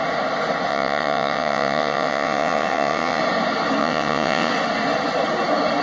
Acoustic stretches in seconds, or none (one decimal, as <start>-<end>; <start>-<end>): 0.0-0.7; 3.2-3.8; 4.5-5.8